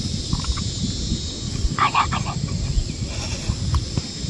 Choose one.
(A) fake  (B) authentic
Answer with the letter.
B